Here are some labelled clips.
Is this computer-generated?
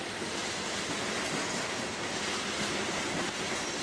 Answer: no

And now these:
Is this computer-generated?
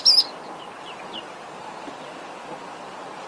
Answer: no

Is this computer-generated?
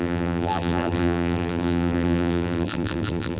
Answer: yes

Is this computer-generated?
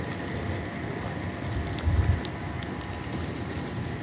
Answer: no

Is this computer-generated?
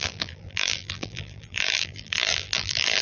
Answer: yes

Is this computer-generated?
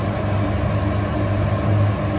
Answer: no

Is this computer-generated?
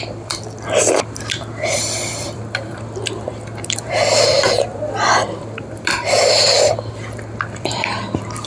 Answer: yes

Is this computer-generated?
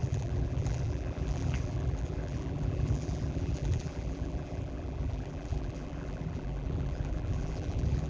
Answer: yes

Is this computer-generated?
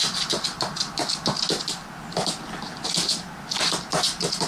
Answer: no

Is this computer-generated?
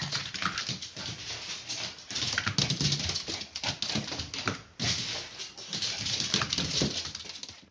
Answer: no